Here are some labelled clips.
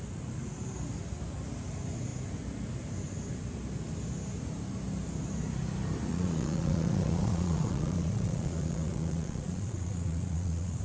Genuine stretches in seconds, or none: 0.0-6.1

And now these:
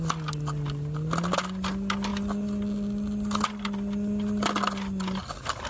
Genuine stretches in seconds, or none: 0.0-5.7

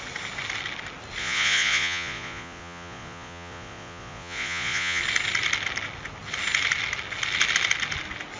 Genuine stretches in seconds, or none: 0.0-1.2; 5.0-8.4